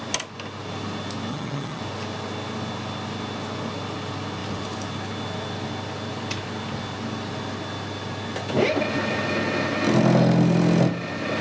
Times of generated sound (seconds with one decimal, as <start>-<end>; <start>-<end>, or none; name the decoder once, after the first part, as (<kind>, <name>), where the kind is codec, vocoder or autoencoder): 1.3-1.8 (vocoder, HiFi-GAN)